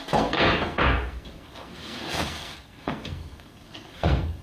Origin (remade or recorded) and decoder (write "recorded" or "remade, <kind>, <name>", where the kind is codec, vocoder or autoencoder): remade, codec, SNAC